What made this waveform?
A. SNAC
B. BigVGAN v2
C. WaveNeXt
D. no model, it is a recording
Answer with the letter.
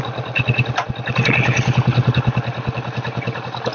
D